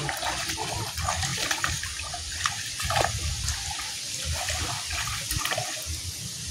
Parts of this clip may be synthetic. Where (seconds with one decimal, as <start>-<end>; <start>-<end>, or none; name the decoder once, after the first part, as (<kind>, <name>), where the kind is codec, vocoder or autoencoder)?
none